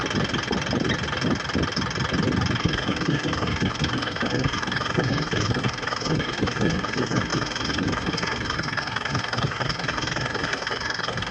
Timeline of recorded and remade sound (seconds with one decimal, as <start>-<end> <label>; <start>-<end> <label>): 0.0-2.6 recorded; 2.6-11.3 remade

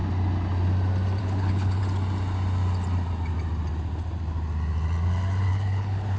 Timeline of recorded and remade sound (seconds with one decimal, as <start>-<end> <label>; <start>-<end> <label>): 0.0-1.2 recorded; 1.2-1.8 remade; 1.8-5.5 recorded; 5.5-6.2 remade